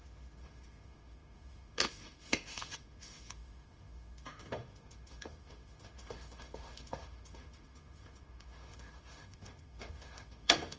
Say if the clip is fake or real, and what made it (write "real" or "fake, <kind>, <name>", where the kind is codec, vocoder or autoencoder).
fake, autoencoder, DAC-VAE